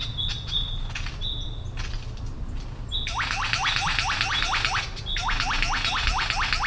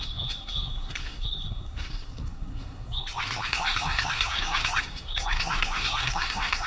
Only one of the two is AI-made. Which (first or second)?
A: second